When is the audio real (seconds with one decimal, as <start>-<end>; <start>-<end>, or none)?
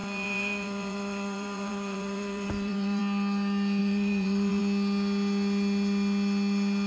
3.0-3.8; 4.6-6.9